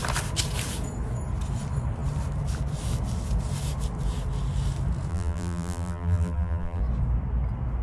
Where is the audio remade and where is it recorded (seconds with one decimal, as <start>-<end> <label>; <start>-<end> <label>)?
0.0-5.1 recorded; 5.1-6.8 remade; 6.8-7.8 recorded